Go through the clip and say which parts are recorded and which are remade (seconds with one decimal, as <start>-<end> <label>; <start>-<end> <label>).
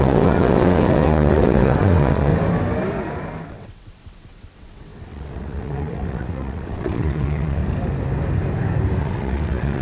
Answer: 0.0-2.3 remade; 2.3-3.5 recorded; 3.5-7.6 remade; 7.6-9.0 recorded; 9.0-9.8 remade